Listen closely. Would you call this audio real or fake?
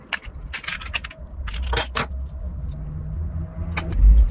real